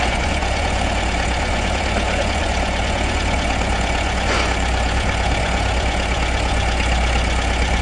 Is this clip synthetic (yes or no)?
yes